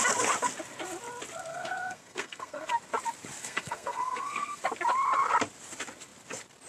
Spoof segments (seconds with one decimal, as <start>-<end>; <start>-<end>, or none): 1.5-2.7; 3.4-4.6